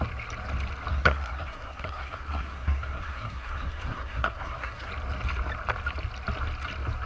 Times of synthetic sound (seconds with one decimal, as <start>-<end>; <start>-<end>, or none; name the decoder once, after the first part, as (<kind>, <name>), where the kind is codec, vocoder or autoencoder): 0.9-4.9 (codec, SNAC)